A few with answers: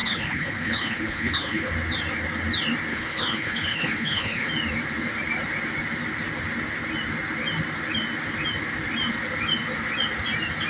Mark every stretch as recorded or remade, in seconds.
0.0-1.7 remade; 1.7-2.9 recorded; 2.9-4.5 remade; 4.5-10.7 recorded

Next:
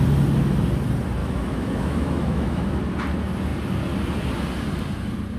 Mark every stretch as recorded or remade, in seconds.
0.0-1.2 recorded; 1.2-2.8 remade; 2.8-5.4 recorded

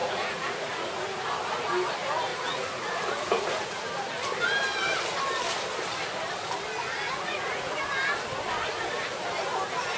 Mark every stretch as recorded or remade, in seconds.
0.0-0.9 remade; 0.9-2.3 recorded; 2.3-3.8 remade; 3.8-6.8 recorded; 6.8-7.8 remade; 7.8-10.0 recorded

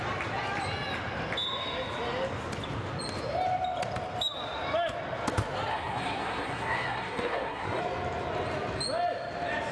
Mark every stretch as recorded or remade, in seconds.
0.0-5.7 recorded; 5.7-7.8 remade; 7.8-9.7 recorded

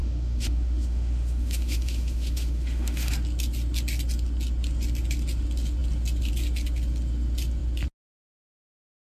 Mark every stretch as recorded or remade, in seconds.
0.0-3.1 remade; 3.1-9.1 recorded